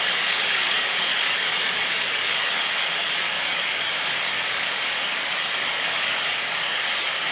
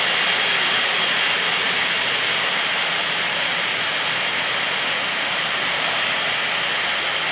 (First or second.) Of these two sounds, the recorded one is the second